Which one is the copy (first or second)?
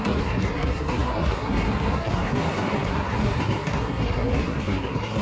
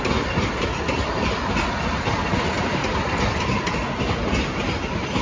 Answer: first